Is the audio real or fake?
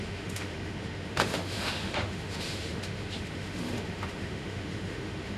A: fake